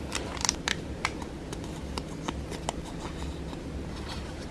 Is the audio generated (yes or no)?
no